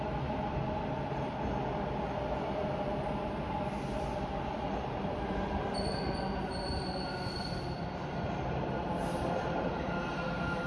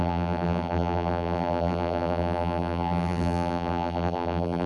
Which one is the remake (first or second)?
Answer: second